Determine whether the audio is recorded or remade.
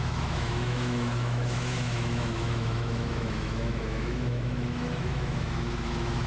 remade